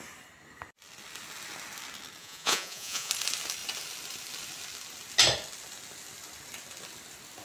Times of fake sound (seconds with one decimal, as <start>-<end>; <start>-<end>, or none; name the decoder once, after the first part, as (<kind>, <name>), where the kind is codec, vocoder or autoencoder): 2.2-3.1 (vocoder, Vocos)